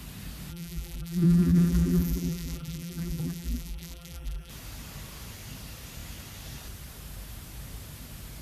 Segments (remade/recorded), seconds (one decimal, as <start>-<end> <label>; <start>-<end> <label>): 0.0-0.5 recorded; 0.5-4.5 remade; 4.5-8.4 recorded